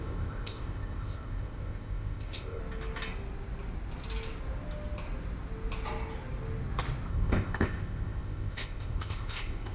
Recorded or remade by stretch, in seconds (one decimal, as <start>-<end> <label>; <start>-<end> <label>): 0.0-2.6 remade; 2.6-7.1 recorded; 7.1-9.7 remade